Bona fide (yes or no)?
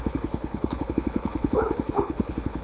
no